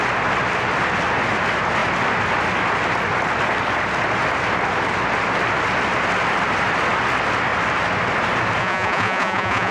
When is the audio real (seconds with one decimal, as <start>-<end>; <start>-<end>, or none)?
0.0-8.6